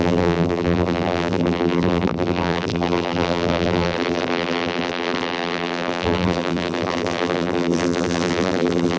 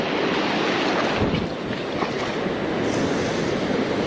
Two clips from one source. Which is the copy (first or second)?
first